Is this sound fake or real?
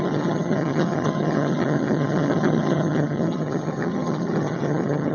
fake